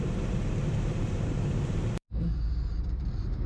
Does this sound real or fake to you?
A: fake